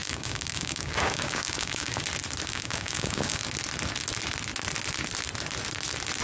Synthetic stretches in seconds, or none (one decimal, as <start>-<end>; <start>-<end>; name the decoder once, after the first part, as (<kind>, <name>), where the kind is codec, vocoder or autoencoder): 0.0-2.0 (codec, DAC); 2.5-3.4